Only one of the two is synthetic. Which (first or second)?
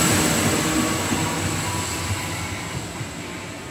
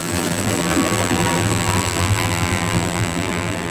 second